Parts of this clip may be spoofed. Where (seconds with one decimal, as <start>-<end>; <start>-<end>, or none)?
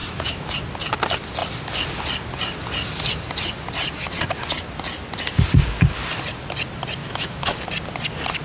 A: 0.0-0.5; 7.0-7.6